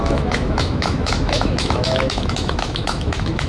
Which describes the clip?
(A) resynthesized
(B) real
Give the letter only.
A